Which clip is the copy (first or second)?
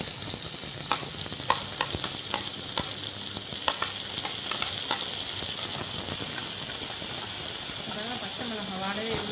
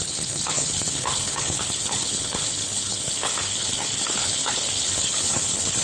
second